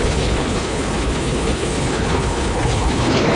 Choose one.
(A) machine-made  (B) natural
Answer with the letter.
A